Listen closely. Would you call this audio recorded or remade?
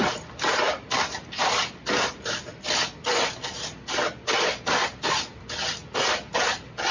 recorded